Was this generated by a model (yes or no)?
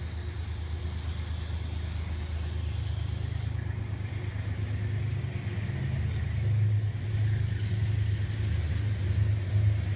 no